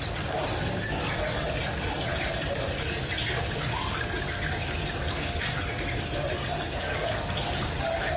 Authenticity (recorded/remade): recorded